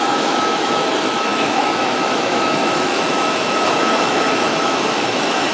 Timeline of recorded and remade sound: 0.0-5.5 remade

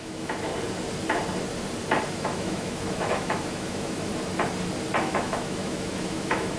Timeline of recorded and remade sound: 0.0-0.5 remade; 0.5-2.1 recorded; 2.1-4.1 remade; 4.1-5.0 recorded; 5.0-6.6 remade

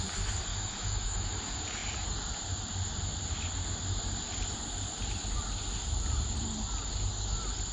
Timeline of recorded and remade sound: 0.0-0.5 recorded; 0.5-1.4 remade; 1.4-7.7 recorded

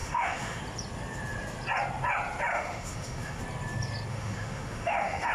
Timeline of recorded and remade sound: 0.0-0.6 remade; 0.6-2.5 recorded; 2.5-3.4 remade; 3.4-4.1 recorded; 4.1-5.3 remade

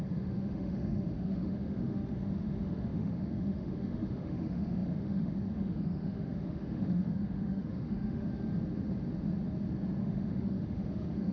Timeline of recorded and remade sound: 0.0-8.3 remade; 8.3-10.0 recorded; 10.0-11.3 remade

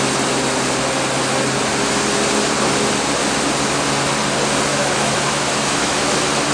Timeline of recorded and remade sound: 0.0-4.7 recorded; 4.7-6.1 remade; 6.1-6.5 recorded